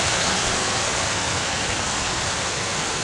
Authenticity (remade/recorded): remade